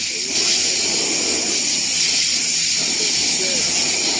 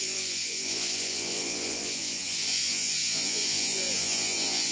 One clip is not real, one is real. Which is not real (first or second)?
second